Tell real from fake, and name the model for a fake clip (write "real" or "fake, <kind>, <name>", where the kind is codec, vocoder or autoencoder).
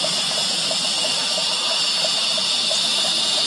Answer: real